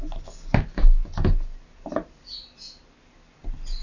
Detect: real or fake real